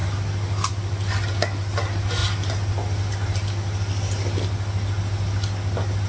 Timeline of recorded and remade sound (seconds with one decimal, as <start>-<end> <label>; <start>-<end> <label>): 0.0-6.1 recorded